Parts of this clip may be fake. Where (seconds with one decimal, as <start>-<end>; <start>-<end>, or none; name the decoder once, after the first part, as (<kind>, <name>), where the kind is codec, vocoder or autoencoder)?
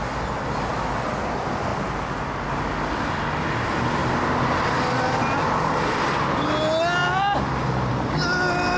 1.7-2.2 (vocoder, BigVGAN v2)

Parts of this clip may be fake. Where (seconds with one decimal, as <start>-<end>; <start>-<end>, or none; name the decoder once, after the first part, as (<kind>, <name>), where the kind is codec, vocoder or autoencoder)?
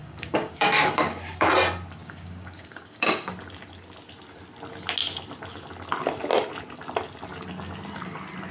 0.0-1.5 (codec, DAC); 2.0-3.3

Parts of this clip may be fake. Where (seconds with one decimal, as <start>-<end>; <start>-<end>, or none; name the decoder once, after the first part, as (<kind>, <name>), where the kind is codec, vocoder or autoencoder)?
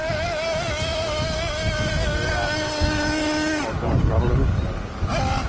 none